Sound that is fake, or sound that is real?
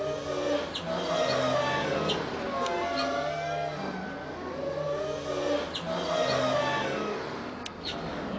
real